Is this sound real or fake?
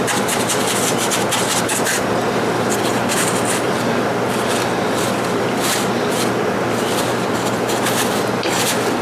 fake